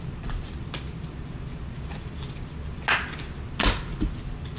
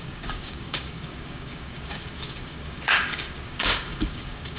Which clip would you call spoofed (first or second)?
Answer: second